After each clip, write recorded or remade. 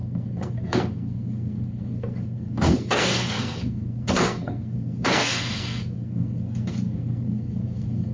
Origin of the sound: remade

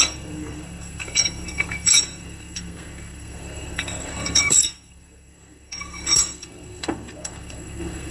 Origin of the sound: remade